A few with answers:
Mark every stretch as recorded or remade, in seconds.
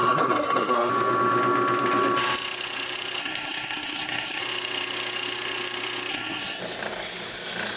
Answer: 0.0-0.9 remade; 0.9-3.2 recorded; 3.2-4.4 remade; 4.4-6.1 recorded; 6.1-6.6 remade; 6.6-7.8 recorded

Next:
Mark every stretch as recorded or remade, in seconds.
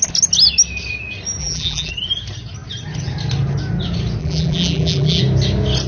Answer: 0.0-1.4 recorded; 1.4-1.9 remade; 1.9-4.2 recorded; 4.2-5.2 remade; 5.2-5.9 recorded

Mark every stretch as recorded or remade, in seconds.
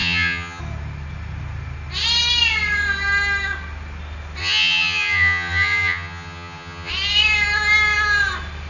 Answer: 0.0-0.6 remade; 0.6-4.4 recorded; 4.4-6.9 remade; 6.9-8.7 recorded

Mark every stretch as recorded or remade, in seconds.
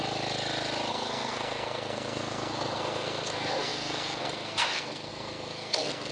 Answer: 0.0-0.9 recorded; 0.9-6.1 remade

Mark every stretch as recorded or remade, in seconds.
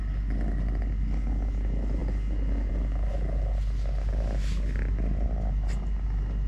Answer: 0.0-6.5 recorded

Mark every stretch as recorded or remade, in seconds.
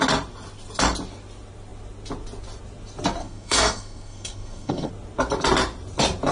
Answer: 0.0-3.2 recorded; 3.2-4.9 remade; 4.9-6.3 recorded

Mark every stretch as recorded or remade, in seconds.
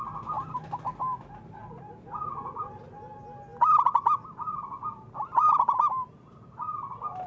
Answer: 0.0-1.6 recorded; 1.6-2.7 remade; 2.7-3.5 recorded; 3.5-7.3 remade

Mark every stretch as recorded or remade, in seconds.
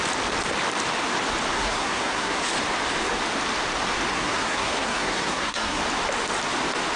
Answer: 0.0-1.5 recorded; 1.5-2.4 remade; 2.4-4.1 recorded; 4.1-5.8 remade; 5.8-7.0 recorded